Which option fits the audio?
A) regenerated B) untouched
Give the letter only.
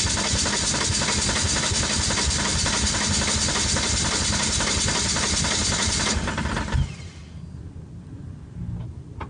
B